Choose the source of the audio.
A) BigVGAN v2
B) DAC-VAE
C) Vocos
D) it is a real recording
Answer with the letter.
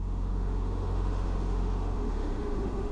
B